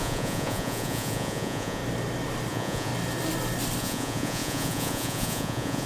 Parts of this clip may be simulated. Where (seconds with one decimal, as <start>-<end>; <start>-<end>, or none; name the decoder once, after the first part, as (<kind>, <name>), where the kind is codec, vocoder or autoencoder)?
0.0-1.8 (vocoder, Vocos); 2.5-2.9; 3.8-5.9